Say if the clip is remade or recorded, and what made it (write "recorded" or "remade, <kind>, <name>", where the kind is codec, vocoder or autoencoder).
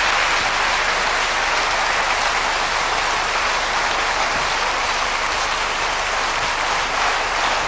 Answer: recorded